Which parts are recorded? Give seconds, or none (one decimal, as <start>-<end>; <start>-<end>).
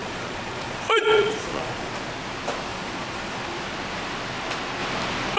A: 1.9-2.7; 3.5-5.4